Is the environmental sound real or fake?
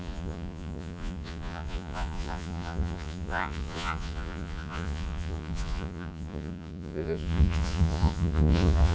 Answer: fake